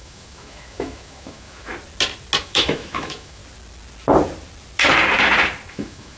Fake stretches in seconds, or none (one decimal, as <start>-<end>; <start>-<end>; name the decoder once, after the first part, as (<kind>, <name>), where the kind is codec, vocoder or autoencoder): 0.0-1.7 (autoencoder, DAC-VAE); 2.4-3.4; 5.7-6.2